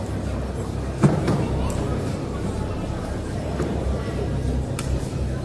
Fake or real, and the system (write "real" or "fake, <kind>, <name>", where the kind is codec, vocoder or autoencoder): real